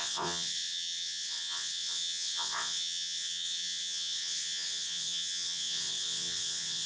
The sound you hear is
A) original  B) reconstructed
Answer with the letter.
B